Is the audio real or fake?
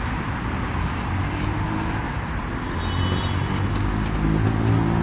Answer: real